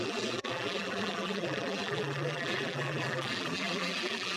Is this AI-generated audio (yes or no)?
yes